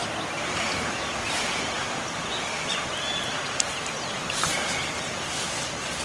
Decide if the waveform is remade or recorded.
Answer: recorded